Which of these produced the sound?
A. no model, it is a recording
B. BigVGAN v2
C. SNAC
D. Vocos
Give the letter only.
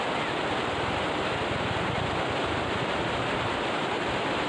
A